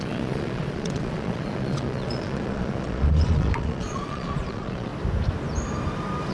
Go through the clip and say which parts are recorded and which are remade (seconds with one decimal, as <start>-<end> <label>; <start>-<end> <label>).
0.0-4.9 remade; 4.9-6.3 recorded